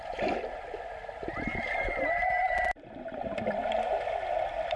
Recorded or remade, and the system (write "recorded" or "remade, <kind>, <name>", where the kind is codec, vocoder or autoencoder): remade, vocoder, BigVGAN v2